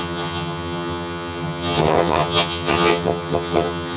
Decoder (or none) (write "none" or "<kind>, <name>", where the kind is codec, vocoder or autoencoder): vocoder, HiFi-GAN